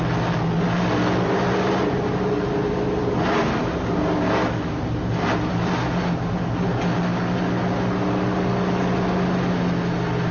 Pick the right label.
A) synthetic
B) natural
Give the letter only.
B